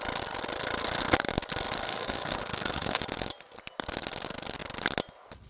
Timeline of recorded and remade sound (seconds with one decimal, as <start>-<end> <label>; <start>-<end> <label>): 0.0-1.9 recorded; 1.9-3.0 remade; 3.0-5.5 recorded